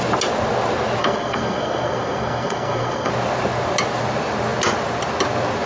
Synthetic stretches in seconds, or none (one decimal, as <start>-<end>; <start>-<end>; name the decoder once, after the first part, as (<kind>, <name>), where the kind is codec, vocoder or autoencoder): 1.0-3.1 (codec, SNAC)